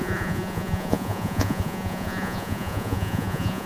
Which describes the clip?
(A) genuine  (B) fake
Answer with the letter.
B